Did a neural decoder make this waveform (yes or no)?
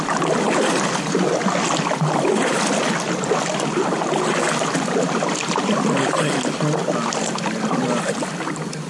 no